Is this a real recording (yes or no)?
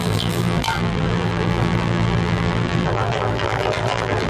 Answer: no